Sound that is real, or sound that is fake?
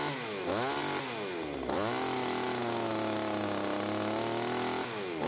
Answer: real